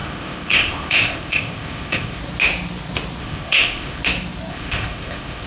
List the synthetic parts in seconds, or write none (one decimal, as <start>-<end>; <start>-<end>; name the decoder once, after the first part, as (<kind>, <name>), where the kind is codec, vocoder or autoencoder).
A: 0.0-2.2 (codec, ZipCodec); 3.2-4.0; 4.5-5.5